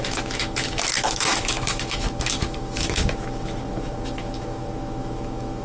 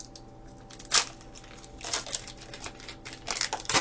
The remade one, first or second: first